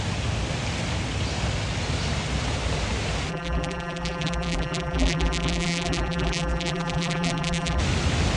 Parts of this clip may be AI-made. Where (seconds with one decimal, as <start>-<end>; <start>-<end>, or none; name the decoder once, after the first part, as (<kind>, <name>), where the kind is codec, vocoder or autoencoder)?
3.3-7.8 (vocoder, BigVGAN v2)